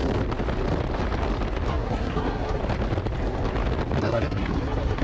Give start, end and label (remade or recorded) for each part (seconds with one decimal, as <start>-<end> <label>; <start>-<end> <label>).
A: 0.0-1.7 recorded; 1.7-2.6 remade; 2.6-4.0 recorded; 4.0-5.0 remade